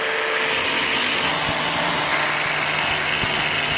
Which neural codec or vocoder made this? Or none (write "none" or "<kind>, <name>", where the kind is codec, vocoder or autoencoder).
none